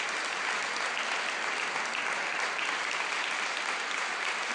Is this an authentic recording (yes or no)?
yes